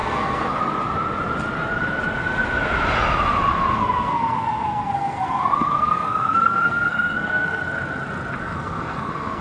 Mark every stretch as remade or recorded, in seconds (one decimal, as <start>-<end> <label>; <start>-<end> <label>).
0.0-0.6 remade; 0.6-3.7 recorded; 3.7-7.6 remade; 7.6-8.4 recorded; 8.4-9.4 remade